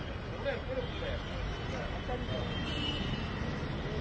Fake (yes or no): no